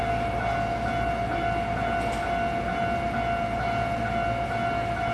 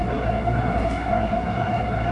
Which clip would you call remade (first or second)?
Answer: second